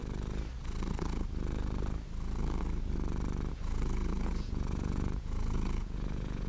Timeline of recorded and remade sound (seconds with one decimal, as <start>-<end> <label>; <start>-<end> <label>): 0.0-3.5 recorded; 3.5-6.5 remade